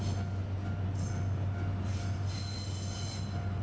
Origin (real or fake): real